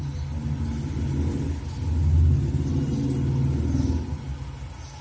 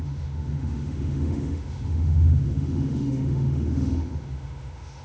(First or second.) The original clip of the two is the first